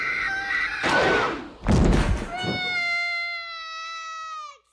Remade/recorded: recorded